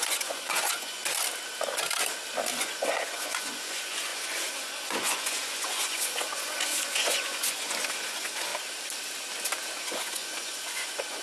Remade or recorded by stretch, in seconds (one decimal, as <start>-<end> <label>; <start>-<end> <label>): 0.0-1.0 remade; 1.0-2.6 recorded; 2.6-8.5 remade; 8.5-9.8 recorded; 9.8-11.2 remade